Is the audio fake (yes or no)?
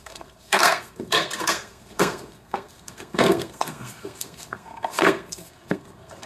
yes